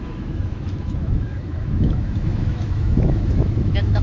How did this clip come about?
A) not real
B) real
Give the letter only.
A